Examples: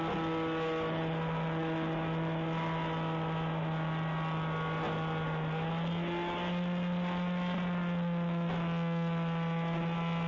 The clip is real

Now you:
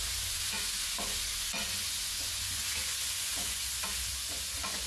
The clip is fake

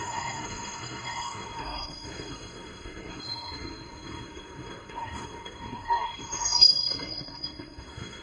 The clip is fake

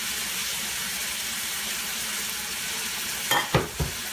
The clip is real